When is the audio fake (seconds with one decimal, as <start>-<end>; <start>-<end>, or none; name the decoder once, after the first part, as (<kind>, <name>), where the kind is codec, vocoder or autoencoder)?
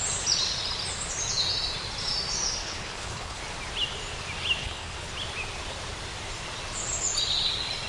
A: 2.6-3.4 (codec, HILCodec); 4.6-5.1